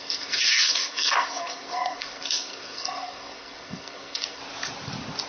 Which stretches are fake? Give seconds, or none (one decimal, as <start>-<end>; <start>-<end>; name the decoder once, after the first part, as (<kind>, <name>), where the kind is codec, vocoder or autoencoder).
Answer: 0.0-4.4 (codec, SNAC)